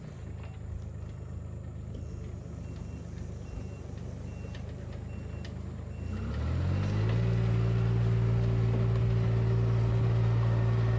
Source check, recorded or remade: recorded